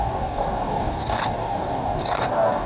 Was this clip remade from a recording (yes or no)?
yes